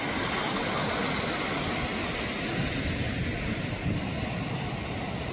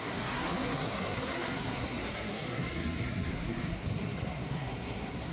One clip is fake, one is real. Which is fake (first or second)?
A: second